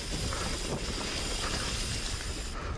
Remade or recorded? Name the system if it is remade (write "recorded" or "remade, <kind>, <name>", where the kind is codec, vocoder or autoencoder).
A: recorded